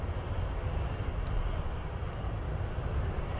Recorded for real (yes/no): yes